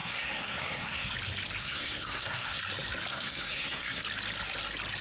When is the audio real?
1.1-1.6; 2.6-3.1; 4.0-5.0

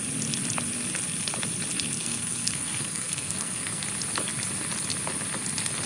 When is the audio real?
0.0-2.0; 3.8-5.9

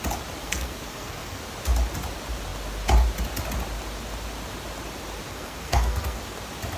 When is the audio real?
0.0-0.4; 1.4-5.3; 6.2-6.8

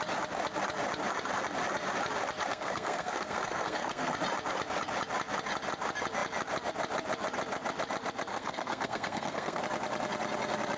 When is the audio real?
0.0-2.5; 4.1-8.3; 9.6-10.8

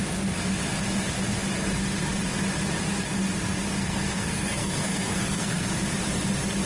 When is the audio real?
0.0-3.8; 5.7-6.7